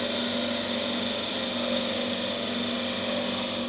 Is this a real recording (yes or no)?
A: yes